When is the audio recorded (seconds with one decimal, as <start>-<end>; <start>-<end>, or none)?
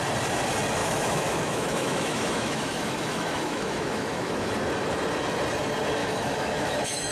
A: 0.0-0.8; 4.5-6.0